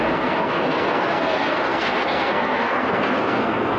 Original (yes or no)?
no